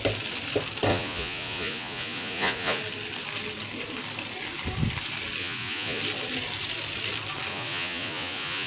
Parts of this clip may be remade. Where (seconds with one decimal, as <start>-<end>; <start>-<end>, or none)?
0.9-2.8; 5.4-6.0; 7.5-8.7